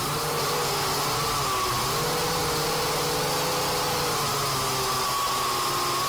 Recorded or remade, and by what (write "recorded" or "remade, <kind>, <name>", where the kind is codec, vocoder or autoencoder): recorded